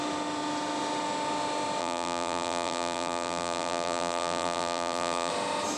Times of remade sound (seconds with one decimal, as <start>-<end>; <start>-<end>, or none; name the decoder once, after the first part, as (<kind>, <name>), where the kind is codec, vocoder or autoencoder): 1.8-5.3 (vocoder, BigVGAN v2)